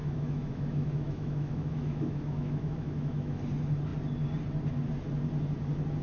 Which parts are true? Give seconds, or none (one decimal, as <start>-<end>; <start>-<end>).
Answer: 3.4-6.0